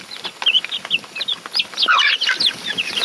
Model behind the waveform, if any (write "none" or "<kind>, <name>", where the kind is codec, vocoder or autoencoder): none